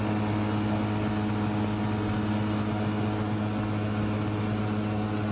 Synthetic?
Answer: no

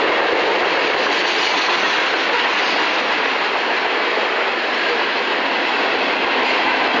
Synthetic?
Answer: no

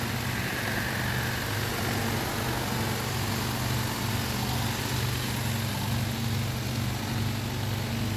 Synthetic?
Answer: no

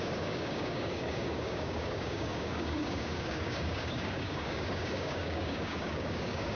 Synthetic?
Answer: yes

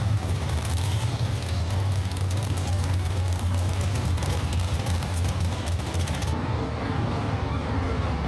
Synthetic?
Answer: yes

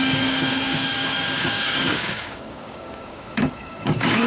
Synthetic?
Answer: yes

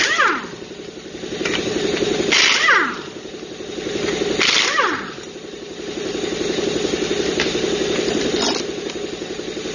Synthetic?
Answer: no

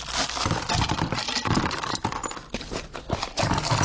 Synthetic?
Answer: no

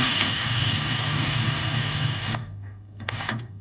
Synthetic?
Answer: yes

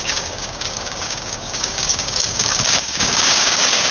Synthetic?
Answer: yes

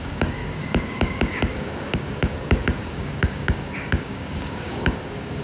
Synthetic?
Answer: yes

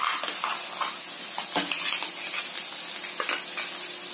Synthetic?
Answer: no